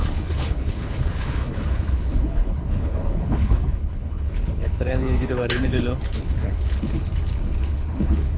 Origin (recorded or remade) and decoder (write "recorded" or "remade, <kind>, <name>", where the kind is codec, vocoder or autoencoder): remade, codec, HILCodec